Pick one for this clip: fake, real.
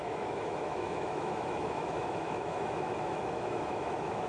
fake